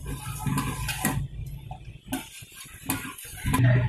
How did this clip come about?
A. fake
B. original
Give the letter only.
B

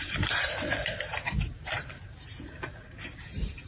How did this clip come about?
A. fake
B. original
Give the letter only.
A